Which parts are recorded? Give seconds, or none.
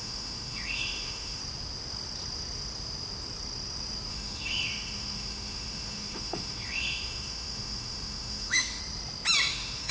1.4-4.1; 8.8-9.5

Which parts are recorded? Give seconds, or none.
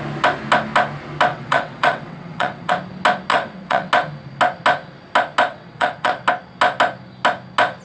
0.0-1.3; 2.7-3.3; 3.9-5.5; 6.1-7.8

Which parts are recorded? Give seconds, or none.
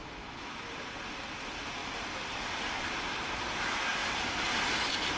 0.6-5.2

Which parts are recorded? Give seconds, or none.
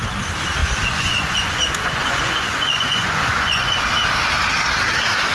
0.0-0.6; 3.8-5.3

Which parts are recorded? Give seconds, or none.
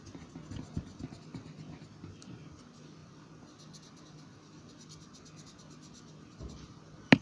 0.0-7.2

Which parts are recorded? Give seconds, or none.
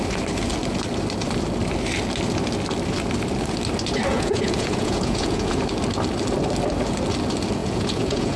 0.0-4.1; 5.6-7.6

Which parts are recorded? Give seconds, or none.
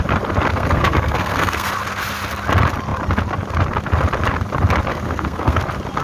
0.0-0.5; 1.7-4.9; 5.6-6.0